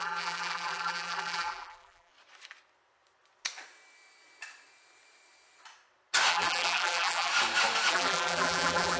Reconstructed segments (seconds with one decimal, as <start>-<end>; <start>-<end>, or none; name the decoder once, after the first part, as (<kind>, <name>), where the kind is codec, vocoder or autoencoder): 0.0-2.1 (vocoder, BigVGAN v2); 6.3-7.3; 7.9-9.0